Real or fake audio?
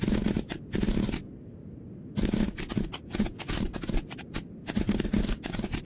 real